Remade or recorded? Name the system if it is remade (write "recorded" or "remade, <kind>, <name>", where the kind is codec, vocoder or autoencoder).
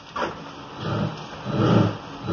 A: recorded